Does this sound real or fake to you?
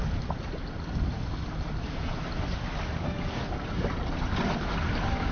real